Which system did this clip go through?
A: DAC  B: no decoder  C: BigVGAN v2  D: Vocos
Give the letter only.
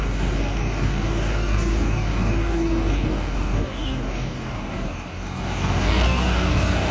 A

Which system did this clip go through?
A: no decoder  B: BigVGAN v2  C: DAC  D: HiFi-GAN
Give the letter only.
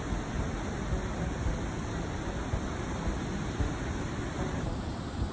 A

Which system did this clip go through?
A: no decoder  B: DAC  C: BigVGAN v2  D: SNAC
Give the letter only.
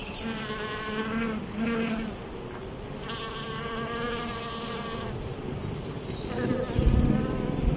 A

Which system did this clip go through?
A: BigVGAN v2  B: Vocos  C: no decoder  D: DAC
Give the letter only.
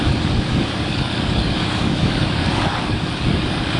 D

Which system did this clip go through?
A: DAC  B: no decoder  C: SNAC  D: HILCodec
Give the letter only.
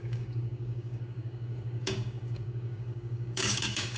A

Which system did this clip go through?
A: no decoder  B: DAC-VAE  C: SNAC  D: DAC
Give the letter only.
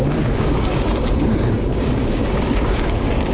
D